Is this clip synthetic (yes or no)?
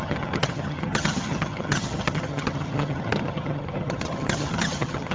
yes